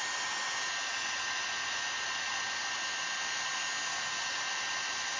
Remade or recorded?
recorded